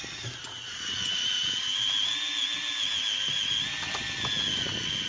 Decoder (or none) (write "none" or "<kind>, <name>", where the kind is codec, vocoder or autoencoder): none